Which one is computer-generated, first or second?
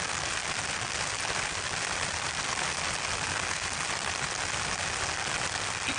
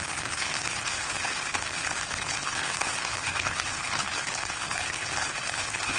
second